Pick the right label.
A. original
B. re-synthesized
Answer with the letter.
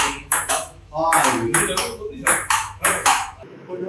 B